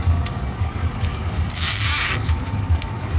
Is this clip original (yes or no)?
no